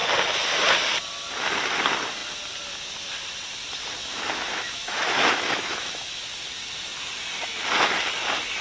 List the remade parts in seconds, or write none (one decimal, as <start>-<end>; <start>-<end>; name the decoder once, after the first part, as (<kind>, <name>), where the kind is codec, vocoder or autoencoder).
4.0-6.2 (autoencoder, DAC-VAE)